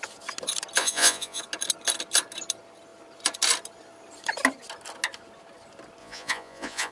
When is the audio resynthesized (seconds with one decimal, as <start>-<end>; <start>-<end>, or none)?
0.8-1.4; 6.0-6.9